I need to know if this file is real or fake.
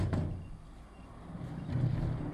real